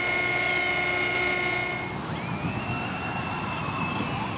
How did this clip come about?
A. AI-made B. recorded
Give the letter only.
B